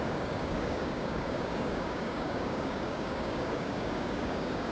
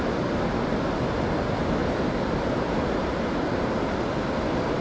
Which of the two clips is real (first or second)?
second